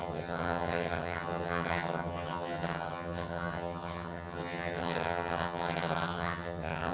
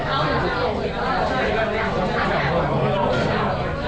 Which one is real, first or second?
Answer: second